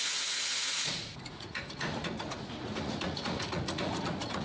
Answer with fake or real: fake